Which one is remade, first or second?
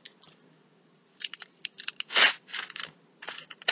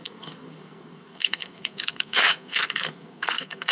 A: second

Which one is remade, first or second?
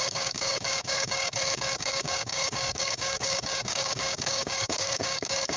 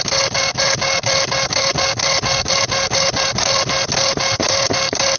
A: first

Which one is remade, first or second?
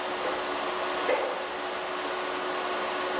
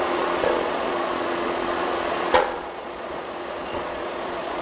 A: second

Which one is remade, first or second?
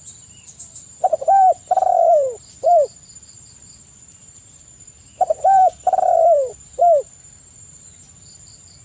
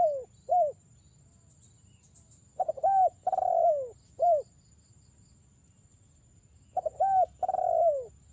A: first